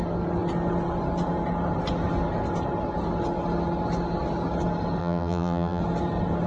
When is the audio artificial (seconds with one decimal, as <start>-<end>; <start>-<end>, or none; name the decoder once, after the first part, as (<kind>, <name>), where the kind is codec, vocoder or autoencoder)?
5.0-5.8 (vocoder, BigVGAN v2)